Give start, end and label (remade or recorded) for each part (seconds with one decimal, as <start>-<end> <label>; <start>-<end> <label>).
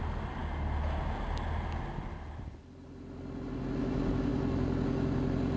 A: 0.0-5.6 recorded